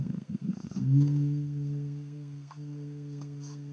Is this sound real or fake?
fake